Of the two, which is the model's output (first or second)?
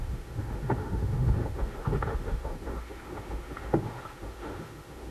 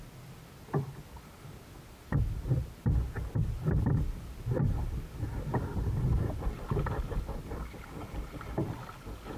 first